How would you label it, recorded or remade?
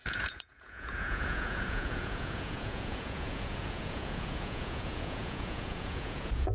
remade